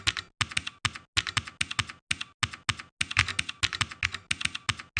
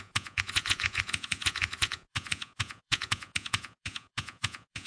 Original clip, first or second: first